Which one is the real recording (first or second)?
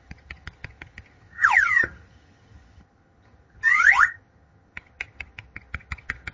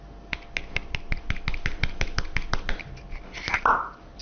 second